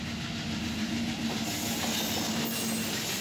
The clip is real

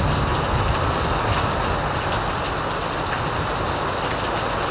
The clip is real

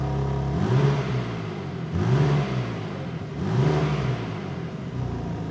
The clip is real